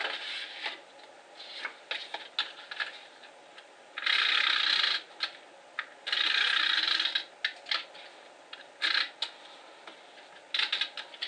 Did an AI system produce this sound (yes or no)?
no